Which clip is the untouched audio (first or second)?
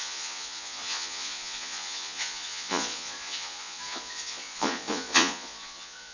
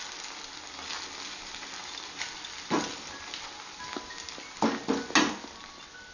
second